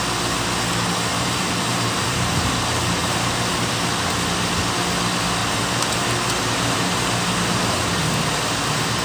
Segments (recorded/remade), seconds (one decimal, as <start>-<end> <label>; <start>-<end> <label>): 0.0-1.1 recorded; 1.1-2.3 remade; 2.3-3.0 recorded; 3.0-3.7 remade; 3.7-5.4 recorded; 5.4-8.1 remade; 8.1-9.0 recorded